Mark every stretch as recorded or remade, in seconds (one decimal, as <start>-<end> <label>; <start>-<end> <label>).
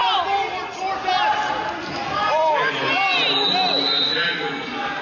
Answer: 0.0-5.0 recorded